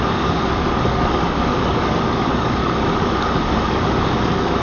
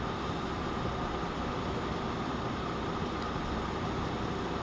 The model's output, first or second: first